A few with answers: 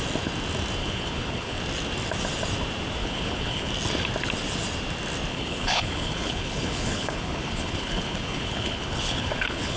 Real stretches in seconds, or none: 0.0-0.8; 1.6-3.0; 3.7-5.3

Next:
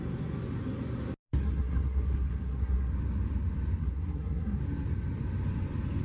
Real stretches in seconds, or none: 0.0-1.4; 2.9-3.8; 4.6-6.0

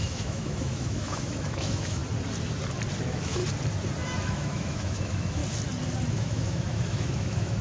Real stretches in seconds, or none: 2.0-3.0; 3.4-4.2; 5.4-6.1

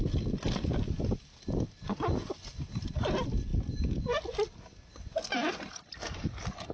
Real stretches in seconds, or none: 0.0-6.7

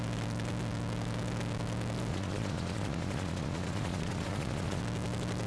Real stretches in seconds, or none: 0.0-2.1; 4.8-5.5